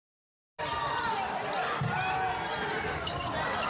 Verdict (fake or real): real